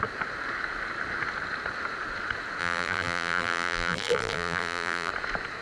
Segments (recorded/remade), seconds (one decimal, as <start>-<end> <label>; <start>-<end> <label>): 0.0-2.6 recorded; 2.6-5.1 remade; 5.1-5.6 recorded